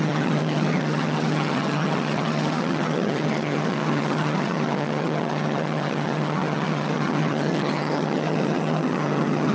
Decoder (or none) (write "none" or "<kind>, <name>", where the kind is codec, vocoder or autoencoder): vocoder, HiFi-GAN